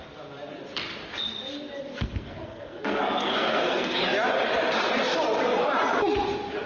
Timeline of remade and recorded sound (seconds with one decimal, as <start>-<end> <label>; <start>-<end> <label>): 0.0-1.9 recorded; 1.9-4.0 remade; 4.0-6.7 recorded